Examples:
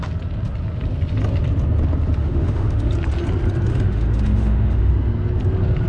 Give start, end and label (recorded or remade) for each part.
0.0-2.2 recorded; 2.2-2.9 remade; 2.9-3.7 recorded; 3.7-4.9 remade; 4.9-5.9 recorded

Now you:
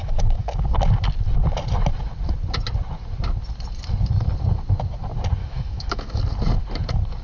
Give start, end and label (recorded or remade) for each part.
0.0-0.6 remade; 0.6-5.4 recorded; 5.4-6.2 remade; 6.2-7.2 recorded